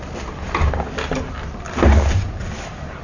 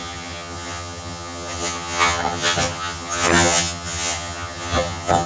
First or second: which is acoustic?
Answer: first